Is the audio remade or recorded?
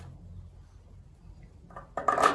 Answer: recorded